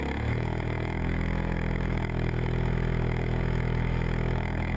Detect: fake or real fake